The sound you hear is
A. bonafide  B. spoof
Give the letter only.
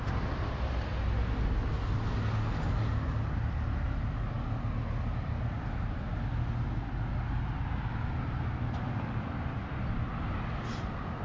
A